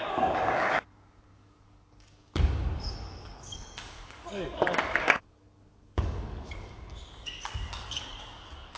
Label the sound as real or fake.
fake